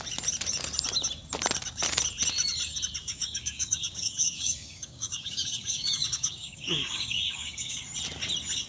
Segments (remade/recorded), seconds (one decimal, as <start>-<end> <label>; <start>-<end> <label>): 0.0-3.0 recorded; 3.0-7.8 remade; 7.8-8.7 recorded